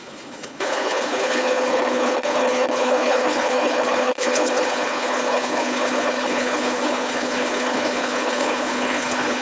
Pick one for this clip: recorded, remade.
remade